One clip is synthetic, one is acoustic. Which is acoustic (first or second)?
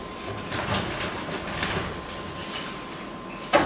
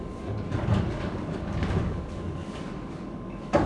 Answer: first